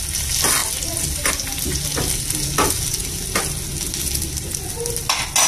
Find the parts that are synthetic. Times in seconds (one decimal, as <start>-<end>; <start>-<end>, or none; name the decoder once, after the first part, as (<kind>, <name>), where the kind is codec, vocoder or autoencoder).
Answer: none